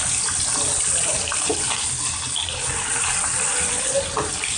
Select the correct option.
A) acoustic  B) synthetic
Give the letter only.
A